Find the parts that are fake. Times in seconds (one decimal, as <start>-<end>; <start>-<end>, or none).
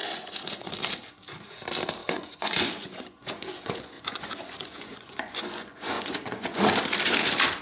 0.0-0.7; 2.0-6.6